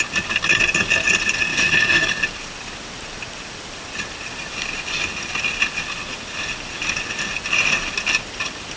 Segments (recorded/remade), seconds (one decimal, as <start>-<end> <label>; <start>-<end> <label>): 0.0-1.5 recorded; 1.5-2.1 remade; 2.1-8.8 recorded